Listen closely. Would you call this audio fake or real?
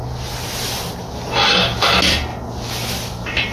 real